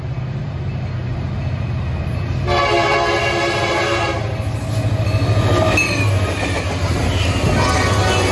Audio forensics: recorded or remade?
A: recorded